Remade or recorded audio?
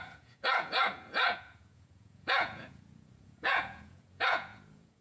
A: remade